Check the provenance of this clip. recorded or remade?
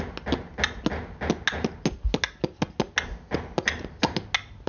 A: recorded